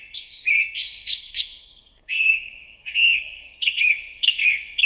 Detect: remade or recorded remade